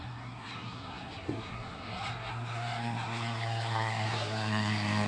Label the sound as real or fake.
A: fake